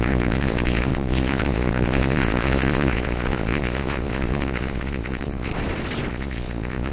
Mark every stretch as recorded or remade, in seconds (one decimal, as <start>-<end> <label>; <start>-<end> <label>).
0.0-5.5 remade; 5.5-6.1 recorded; 6.1-6.9 remade